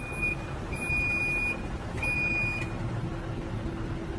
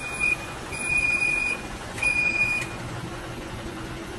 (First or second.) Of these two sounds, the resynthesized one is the second